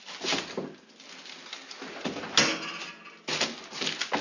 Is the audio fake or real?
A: real